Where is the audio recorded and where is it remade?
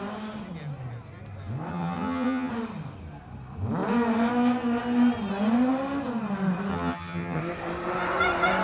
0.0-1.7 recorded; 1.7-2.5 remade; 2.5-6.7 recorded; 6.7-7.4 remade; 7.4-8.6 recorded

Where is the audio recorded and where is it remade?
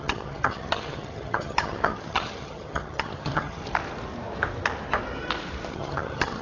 0.0-3.6 remade; 3.6-5.7 recorded; 5.7-6.4 remade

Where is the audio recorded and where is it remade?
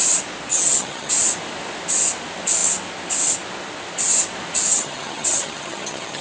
0.0-0.5 recorded; 0.5-1.1 remade; 1.1-4.7 recorded; 4.7-6.2 remade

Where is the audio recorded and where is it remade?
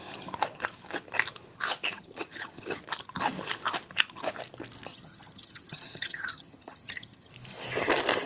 0.0-1.9 recorded; 1.9-2.8 remade; 2.8-4.9 recorded; 4.9-7.3 remade; 7.3-8.3 recorded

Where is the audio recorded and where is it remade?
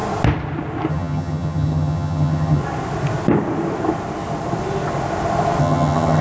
0.0-0.9 recorded; 0.9-2.6 remade; 2.6-5.6 recorded; 5.6-6.2 remade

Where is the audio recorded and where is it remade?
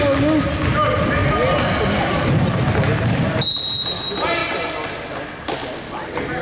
0.0-6.4 recorded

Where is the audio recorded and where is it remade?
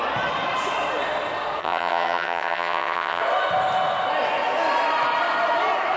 0.0-1.6 recorded; 1.6-3.2 remade; 3.2-6.0 recorded